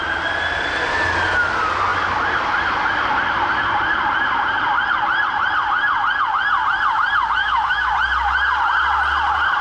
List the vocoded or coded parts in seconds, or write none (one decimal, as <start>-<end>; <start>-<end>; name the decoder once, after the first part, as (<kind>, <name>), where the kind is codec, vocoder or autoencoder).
7.4-7.9 (autoencoder, DAC-VAE)